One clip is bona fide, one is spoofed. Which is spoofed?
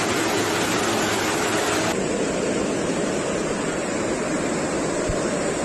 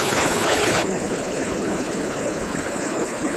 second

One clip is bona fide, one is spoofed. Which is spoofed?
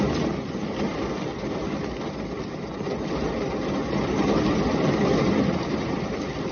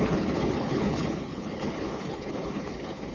second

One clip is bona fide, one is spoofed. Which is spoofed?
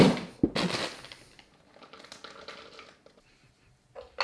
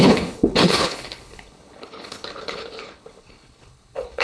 second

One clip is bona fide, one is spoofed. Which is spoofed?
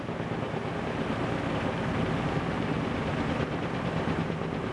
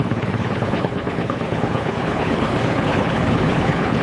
second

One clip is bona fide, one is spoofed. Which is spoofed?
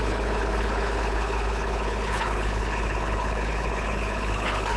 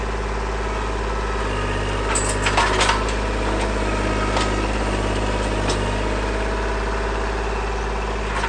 first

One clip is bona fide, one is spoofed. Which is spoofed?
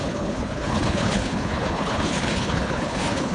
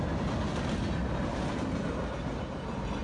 first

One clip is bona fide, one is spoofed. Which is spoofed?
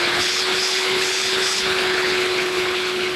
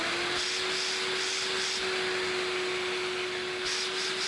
first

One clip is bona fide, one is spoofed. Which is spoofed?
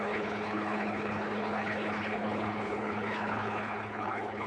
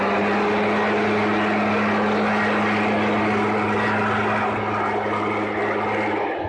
first